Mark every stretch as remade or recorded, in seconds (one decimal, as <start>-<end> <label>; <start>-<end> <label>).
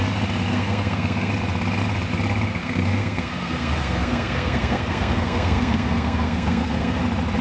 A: 0.0-0.5 recorded; 0.5-1.3 remade; 1.3-2.6 recorded; 2.6-7.0 remade; 7.0-7.4 recorded